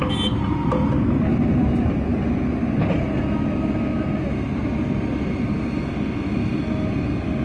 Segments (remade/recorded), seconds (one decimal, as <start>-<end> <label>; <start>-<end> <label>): 0.0-7.4 recorded